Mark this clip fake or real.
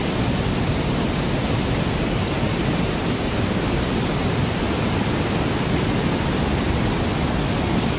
real